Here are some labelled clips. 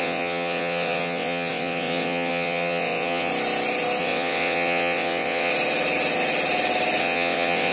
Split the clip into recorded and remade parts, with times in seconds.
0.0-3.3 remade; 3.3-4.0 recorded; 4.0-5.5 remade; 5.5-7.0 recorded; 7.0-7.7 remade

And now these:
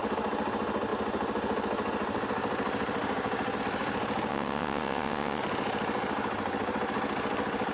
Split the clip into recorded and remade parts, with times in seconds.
0.0-4.3 recorded; 4.3-5.4 remade; 5.4-7.7 recorded